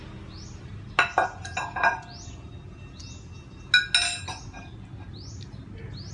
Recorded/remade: recorded